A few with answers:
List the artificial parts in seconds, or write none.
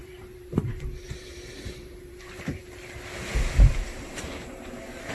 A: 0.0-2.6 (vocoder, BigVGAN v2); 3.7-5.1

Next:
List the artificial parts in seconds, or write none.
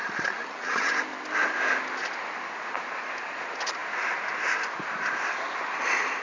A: 0.0-0.9 (vocoder, HiFi-GAN)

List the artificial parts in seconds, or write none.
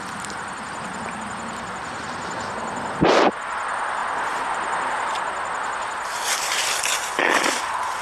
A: none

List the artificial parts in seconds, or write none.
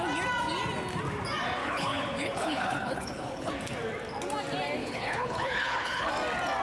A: 1.6-3.5 (codec, HILCodec); 4.8-6.1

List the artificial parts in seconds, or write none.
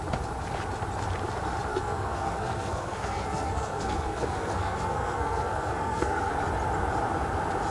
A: 1.7-6.3 (codec, SNAC)